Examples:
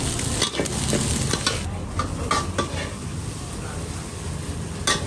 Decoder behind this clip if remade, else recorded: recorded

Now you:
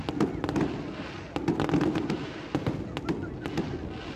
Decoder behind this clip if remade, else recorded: recorded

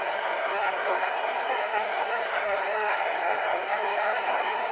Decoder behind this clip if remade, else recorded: remade, codec, SNAC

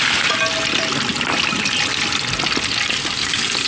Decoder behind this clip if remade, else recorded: recorded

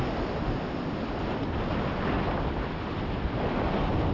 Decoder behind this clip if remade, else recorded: recorded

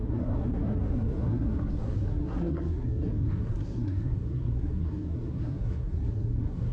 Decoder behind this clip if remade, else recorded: remade, codec, SNAC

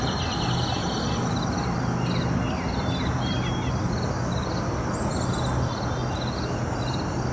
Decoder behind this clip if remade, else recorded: recorded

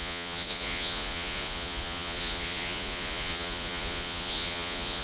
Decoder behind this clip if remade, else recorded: remade, vocoder, Vocos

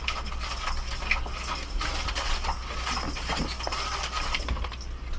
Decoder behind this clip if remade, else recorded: recorded